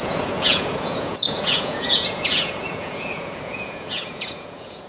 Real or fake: fake